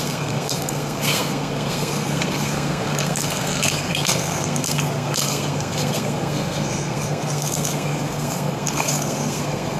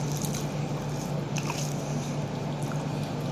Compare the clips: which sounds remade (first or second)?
first